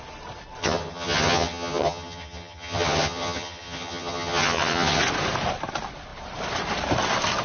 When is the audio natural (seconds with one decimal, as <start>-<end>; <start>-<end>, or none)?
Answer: 0.0-0.6; 5.0-7.4